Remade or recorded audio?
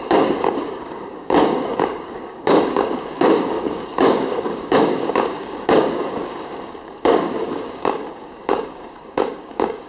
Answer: remade